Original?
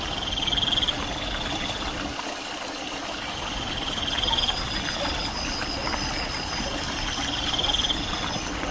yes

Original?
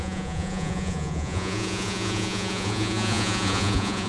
no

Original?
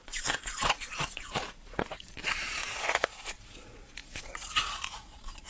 no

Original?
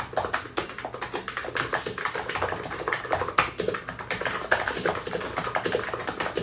yes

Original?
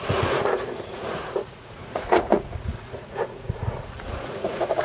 no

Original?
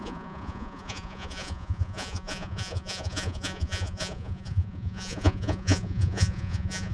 no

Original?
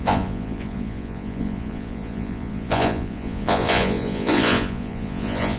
no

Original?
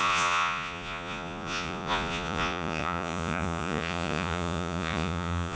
no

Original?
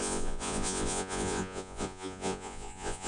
no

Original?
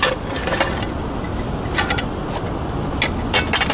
yes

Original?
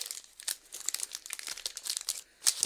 yes